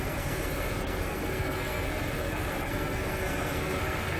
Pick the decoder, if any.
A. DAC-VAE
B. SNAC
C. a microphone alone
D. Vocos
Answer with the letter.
B